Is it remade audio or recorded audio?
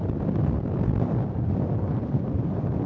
remade